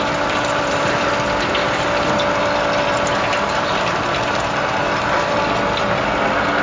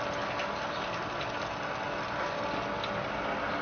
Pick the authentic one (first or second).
second